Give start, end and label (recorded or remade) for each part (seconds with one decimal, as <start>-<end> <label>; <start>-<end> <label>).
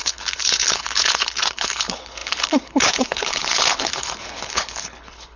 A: 0.0-5.4 remade